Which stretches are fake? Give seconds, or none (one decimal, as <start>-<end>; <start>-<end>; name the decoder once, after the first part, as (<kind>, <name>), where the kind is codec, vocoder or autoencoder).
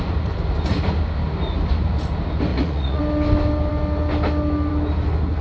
2.5-3.0 (vocoder, Vocos)